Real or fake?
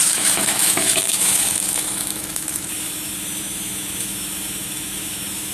fake